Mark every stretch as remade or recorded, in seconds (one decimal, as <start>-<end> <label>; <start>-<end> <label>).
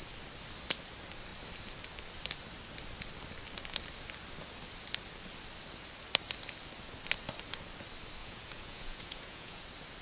0.0-8.2 recorded; 8.2-9.6 remade; 9.6-10.0 recorded